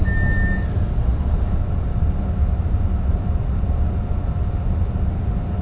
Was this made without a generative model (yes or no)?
yes